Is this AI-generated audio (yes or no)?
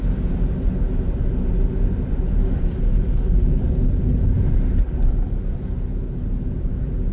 no